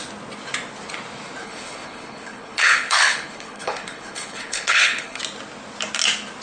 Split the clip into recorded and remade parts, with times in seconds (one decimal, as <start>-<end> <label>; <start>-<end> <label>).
0.0-1.4 recorded; 1.4-5.2 remade; 5.2-6.4 recorded